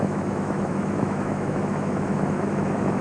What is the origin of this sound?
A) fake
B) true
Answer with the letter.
A